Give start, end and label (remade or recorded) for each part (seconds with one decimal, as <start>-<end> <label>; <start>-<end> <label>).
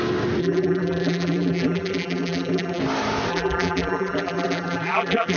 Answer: 0.0-0.4 recorded; 0.4-2.8 remade; 2.8-3.3 recorded; 3.3-5.4 remade